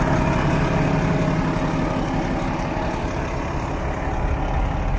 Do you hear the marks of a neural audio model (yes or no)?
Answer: no